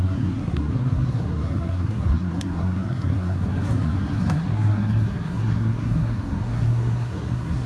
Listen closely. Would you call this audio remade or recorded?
remade